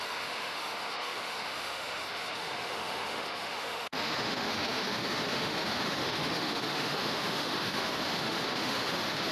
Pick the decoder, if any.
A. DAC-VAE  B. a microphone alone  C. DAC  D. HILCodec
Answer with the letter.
A